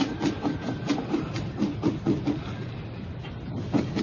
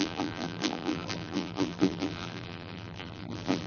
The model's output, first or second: second